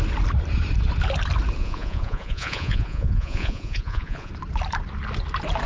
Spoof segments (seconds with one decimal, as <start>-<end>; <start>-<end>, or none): 1.6-4.3